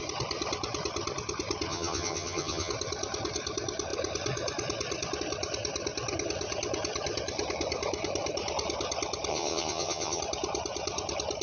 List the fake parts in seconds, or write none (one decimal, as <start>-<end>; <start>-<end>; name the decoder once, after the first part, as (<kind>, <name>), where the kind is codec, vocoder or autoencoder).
1.7-2.7 (vocoder, HiFi-GAN); 9.3-10.2